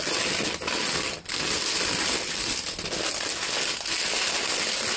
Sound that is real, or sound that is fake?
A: real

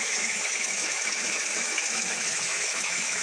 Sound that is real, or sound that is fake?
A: fake